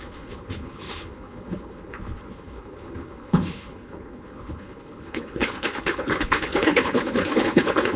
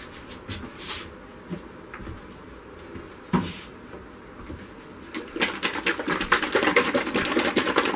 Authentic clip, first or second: second